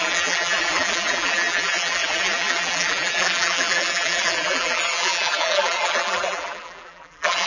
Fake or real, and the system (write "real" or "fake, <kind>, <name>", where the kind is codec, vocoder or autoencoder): fake, vocoder, BigVGAN v2